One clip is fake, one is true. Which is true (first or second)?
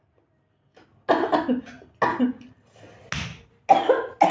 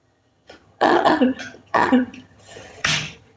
first